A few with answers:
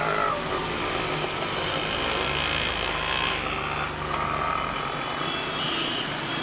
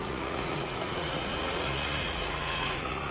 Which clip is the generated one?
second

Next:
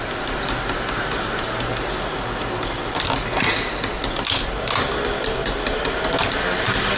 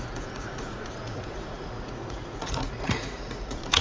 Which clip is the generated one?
second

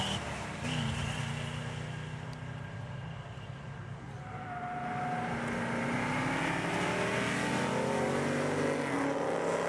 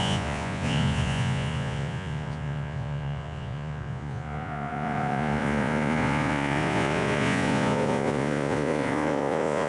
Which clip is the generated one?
second